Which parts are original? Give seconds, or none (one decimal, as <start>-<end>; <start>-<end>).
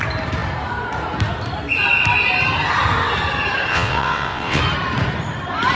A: 0.0-3.7; 4.6-5.7